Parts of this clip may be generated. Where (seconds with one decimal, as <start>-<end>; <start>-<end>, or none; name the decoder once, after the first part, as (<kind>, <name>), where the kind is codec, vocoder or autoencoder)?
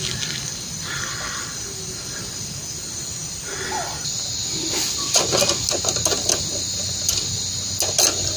none